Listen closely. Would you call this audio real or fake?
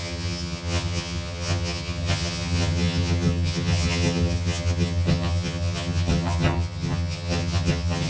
fake